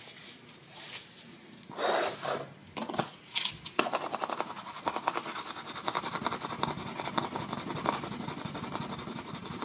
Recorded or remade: recorded